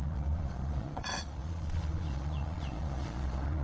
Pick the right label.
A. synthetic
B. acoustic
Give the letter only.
A